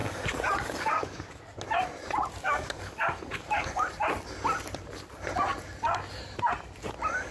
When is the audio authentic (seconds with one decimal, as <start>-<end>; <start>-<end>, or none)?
1.4-2.4; 3.9-7.3